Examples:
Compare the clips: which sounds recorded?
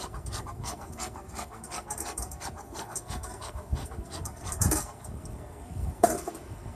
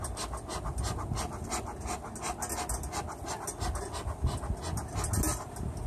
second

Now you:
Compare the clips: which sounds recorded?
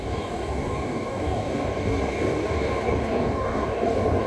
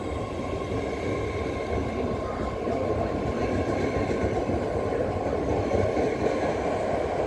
second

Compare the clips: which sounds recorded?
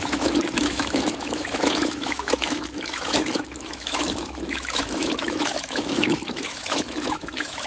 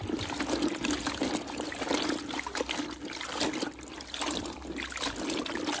second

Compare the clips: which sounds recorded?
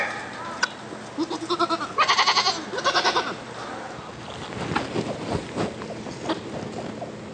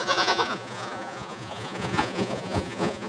first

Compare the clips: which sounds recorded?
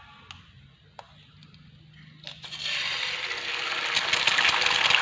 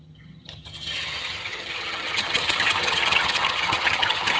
first